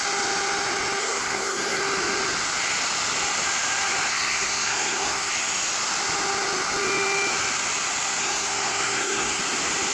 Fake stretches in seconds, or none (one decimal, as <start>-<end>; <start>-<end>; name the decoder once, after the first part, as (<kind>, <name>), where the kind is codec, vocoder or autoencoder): 1.0-1.8 (codec, SNAC); 4.1-5.3; 8.2-9.4